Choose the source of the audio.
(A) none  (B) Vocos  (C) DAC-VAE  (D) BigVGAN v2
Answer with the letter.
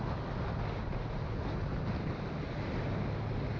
A